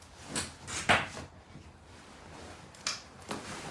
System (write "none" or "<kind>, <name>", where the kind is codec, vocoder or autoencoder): none